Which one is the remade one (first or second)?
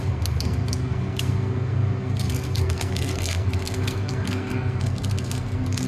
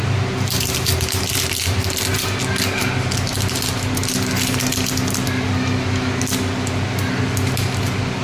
first